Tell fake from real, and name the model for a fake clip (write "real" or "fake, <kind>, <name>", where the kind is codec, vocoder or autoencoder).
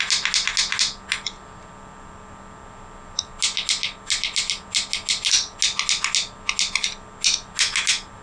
real